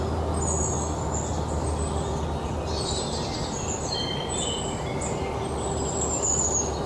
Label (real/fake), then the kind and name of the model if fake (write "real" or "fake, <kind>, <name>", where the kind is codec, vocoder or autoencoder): real